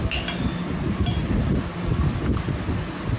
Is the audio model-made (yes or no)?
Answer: no